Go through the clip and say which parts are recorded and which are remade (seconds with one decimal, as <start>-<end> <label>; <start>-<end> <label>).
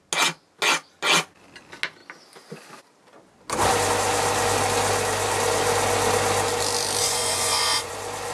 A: 0.0-7.0 recorded; 7.0-7.9 remade; 7.9-8.3 recorded